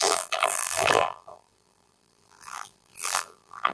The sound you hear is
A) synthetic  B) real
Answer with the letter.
A